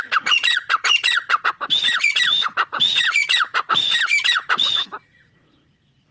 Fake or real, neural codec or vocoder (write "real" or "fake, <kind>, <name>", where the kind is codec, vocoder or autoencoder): fake, vocoder, Vocos